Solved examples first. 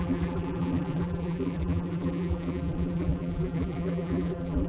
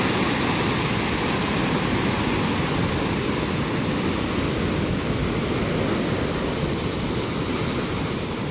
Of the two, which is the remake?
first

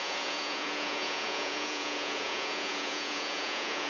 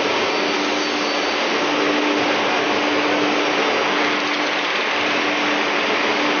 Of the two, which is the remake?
first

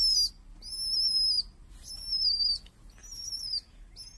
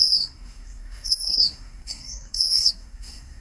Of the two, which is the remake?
second